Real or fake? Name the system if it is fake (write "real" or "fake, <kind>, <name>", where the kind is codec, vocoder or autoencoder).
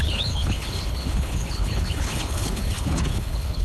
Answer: fake, codec, HILCodec